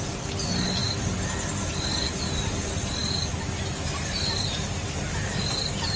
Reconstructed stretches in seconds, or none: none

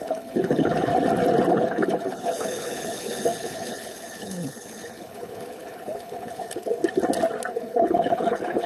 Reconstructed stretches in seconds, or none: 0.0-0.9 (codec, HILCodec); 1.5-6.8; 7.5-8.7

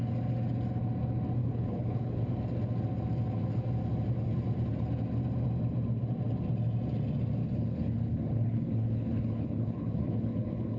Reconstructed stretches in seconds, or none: 1.4-2.2 (codec, HILCodec); 7.4-10.8

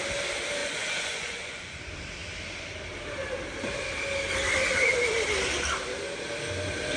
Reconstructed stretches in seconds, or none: 0.6-1.8 (vocoder, Vocos)